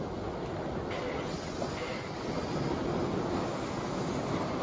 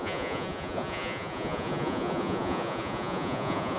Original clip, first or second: first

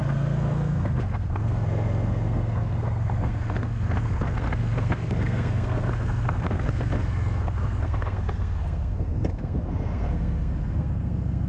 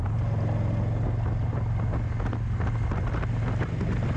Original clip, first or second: second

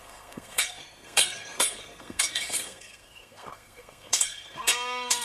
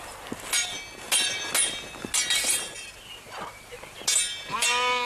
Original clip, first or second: second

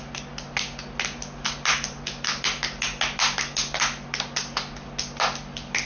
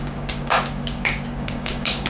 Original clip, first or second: first